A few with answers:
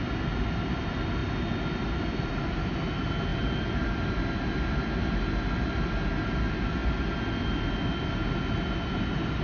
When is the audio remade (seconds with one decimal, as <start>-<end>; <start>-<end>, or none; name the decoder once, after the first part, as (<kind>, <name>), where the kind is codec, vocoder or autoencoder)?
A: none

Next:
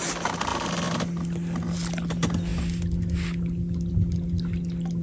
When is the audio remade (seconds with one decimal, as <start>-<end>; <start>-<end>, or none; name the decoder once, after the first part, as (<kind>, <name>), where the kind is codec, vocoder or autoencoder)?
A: none

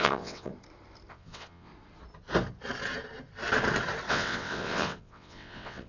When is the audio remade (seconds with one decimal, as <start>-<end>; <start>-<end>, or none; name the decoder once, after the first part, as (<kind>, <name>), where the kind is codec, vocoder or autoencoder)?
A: 0.0-0.5 (vocoder, WaveNeXt); 1.1-1.7; 4.1-5.9

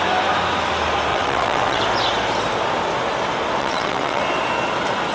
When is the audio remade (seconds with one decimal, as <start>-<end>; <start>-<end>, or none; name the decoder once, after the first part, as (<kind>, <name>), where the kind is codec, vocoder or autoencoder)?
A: 1.1-1.8 (vocoder, WaveNeXt); 3.6-4.2